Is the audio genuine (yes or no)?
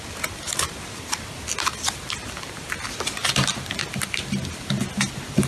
yes